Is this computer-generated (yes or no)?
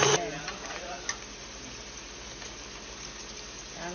no